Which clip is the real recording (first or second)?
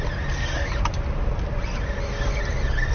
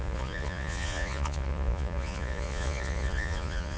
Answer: first